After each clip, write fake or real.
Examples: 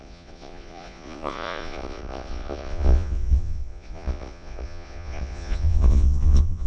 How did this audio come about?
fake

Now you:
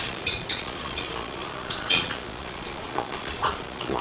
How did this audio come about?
fake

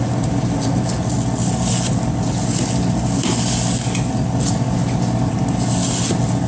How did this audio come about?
real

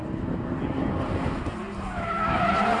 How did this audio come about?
real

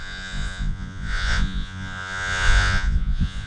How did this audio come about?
fake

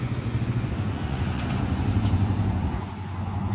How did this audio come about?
fake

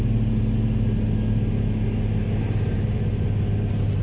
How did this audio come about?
real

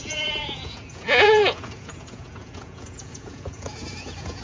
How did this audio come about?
fake